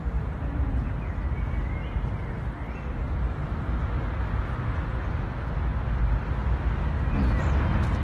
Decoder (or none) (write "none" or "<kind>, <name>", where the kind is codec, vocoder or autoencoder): none